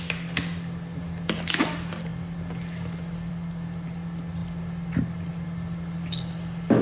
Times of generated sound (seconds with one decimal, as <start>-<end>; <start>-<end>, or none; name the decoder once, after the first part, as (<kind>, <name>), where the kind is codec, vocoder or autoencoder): none